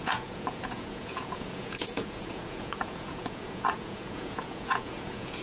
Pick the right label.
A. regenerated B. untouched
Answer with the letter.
A